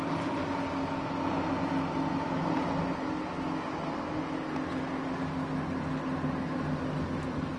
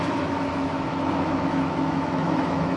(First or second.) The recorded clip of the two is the first